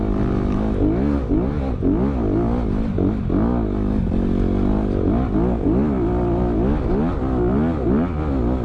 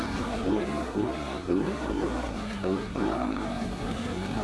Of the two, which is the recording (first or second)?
first